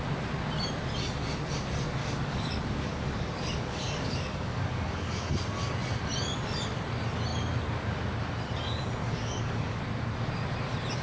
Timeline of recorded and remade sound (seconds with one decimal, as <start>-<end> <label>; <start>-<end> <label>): 0.0-2.0 recorded; 2.0-5.3 remade; 5.3-9.0 recorded; 9.0-9.8 remade; 9.8-11.0 recorded